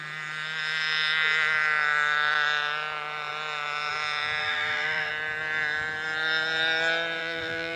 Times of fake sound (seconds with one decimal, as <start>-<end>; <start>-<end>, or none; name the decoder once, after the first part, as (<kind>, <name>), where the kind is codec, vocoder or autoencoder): 4.4-5.1 (vocoder, BigVGAN v2); 7.2-7.8